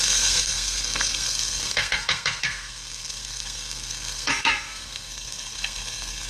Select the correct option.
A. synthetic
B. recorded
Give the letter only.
A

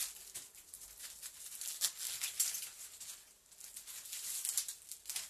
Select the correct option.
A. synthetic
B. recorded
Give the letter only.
B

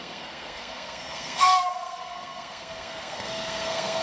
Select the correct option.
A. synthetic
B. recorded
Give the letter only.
A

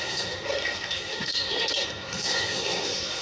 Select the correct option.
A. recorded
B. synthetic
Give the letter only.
B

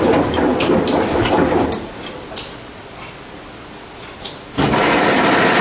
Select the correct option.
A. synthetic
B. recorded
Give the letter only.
B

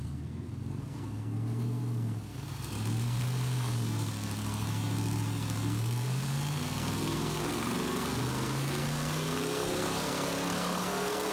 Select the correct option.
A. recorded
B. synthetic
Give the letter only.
B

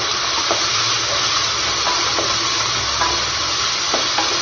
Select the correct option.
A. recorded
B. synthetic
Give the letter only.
A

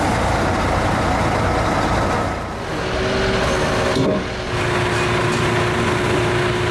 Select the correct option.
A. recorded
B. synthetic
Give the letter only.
A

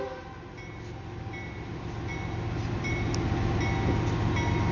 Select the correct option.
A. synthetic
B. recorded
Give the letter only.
B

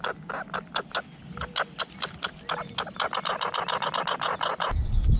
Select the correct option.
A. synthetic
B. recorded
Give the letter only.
B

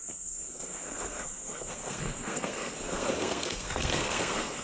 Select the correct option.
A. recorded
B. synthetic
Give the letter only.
B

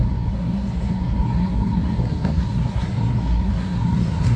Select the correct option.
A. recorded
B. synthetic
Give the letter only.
B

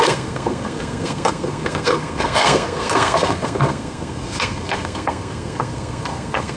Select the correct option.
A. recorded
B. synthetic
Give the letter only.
B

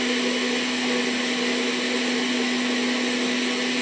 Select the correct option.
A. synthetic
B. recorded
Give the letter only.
B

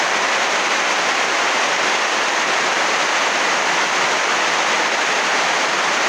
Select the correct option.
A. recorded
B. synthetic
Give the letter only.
A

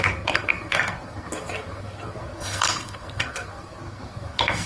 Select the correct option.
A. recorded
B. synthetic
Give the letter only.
B